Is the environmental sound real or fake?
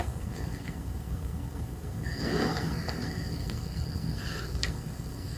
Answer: fake